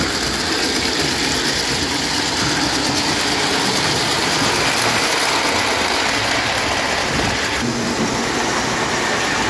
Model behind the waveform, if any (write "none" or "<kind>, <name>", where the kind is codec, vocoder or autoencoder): none